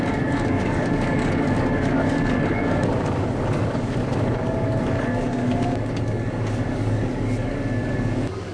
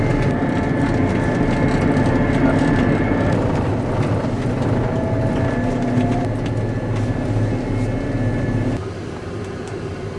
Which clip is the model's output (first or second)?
first